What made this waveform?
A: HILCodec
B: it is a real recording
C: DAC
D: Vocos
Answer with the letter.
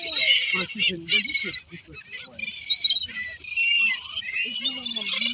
B